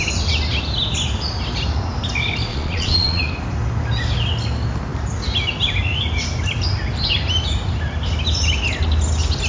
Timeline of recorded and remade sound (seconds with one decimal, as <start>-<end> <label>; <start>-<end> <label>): 0.0-2.5 recorded; 2.5-3.3 remade; 3.3-9.5 recorded